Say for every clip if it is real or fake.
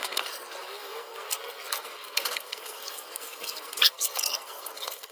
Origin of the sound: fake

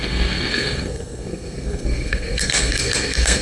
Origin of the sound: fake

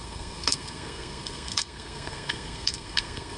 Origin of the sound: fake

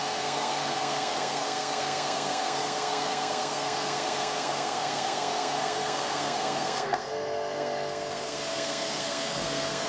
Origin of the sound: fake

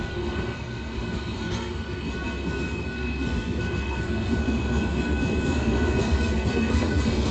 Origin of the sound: fake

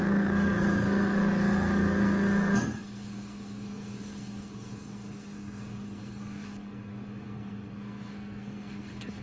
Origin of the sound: fake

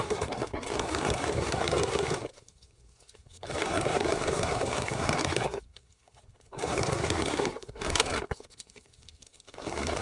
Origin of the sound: fake